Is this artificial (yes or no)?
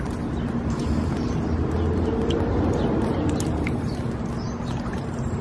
no